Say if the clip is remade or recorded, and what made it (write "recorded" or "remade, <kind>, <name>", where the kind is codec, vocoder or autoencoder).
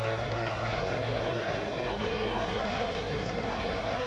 remade, codec, SNAC